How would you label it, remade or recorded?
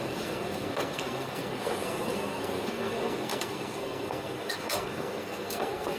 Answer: remade